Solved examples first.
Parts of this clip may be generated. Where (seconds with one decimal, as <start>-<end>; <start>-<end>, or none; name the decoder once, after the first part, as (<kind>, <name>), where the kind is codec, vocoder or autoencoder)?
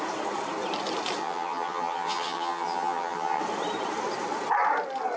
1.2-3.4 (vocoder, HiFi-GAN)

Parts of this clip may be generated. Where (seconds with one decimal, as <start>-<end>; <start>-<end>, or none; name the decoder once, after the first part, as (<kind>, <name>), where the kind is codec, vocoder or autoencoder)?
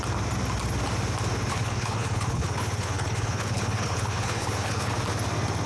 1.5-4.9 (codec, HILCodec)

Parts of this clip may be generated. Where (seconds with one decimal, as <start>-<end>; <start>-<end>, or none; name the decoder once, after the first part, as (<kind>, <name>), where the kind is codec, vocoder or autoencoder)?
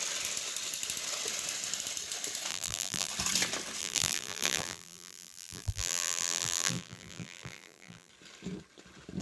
2.5-3.1 (vocoder, BigVGAN v2); 3.8-8.1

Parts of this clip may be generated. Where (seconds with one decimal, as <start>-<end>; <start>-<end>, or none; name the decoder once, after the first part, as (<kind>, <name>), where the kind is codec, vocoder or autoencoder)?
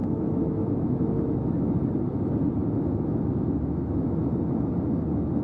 0.0-1.9 (autoencoder, DAC-VAE); 2.6-4.7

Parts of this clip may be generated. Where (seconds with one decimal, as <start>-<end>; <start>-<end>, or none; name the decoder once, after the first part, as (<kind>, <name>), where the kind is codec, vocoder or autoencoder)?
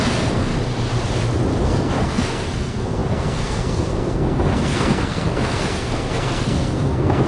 0.0-0.5 (codec, SNAC); 1.6-7.3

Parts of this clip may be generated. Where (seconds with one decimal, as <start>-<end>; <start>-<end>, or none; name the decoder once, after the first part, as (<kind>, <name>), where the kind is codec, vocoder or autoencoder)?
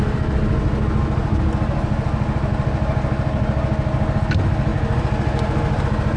none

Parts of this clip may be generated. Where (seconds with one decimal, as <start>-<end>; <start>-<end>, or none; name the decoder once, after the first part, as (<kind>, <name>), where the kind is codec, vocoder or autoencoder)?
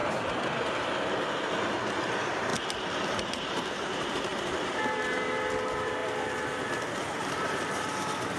2.1-2.5 (vocoder, BigVGAN v2); 3.1-6.0; 7.0-8.4